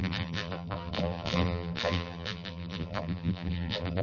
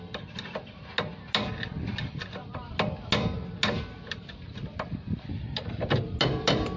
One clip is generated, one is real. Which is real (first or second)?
second